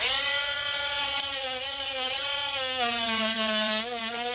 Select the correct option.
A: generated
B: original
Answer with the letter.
A